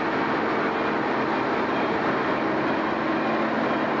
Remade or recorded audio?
recorded